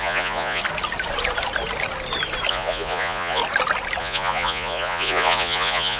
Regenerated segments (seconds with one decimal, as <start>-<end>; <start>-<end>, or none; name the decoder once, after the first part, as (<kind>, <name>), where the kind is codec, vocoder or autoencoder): 0.0-0.6 (vocoder, Vocos); 2.5-3.4; 4.0-6.0